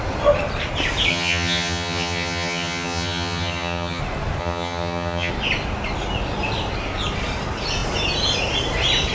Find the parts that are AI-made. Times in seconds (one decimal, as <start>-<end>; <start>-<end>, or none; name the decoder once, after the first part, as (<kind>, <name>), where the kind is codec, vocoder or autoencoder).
1.1-4.0 (vocoder, HiFi-GAN); 4.4-5.3

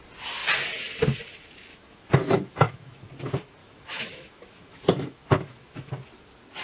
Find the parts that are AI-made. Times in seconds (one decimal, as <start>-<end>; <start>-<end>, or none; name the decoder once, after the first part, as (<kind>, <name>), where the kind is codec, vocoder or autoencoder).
1.7-3.1 (autoencoder, DAC-VAE); 3.6-5.9

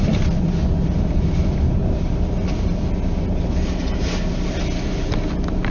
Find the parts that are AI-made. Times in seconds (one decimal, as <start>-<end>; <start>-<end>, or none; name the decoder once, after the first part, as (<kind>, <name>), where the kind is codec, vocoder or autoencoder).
none

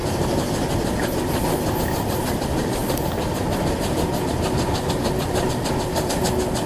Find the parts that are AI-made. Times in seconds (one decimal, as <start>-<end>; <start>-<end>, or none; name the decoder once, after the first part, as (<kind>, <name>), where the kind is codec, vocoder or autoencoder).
none

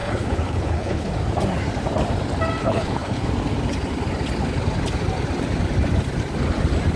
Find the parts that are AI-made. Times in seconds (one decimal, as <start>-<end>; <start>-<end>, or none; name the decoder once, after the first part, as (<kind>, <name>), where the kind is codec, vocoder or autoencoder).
0.0-1.1 (codec, HILCodec); 2.6-3.3

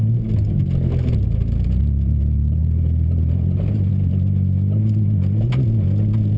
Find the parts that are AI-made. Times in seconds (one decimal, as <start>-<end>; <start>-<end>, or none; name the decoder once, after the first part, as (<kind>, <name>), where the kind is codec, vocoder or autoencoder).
2.6-3.9 (vocoder, BigVGAN v2)

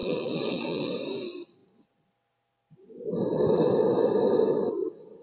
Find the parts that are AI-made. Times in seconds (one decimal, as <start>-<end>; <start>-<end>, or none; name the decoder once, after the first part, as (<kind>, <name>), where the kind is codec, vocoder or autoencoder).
0.0-0.9 (vocoder, Vocos)

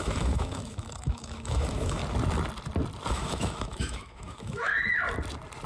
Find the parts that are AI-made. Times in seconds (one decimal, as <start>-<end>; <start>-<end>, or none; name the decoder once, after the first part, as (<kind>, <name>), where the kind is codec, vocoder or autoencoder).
0.0-2.0 (autoencoder, DAC-VAE); 3.1-4.7